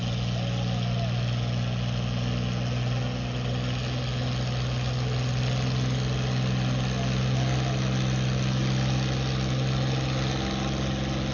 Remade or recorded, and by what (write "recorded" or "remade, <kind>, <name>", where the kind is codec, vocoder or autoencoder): recorded